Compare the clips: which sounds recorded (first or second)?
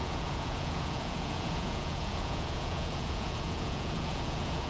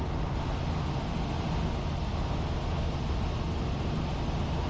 second